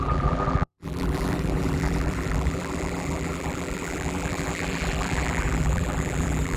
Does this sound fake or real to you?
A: fake